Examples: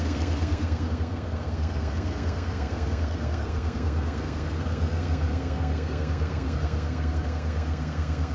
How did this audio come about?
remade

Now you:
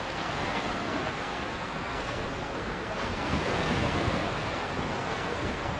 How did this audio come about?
remade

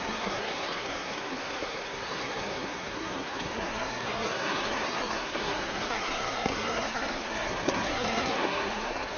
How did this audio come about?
remade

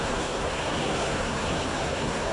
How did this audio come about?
remade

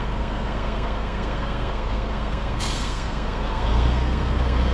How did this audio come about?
remade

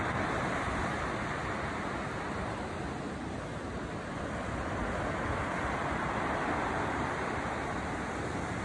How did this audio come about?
recorded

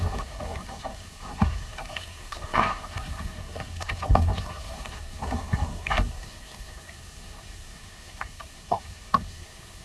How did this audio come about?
remade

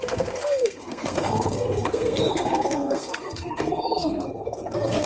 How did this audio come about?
remade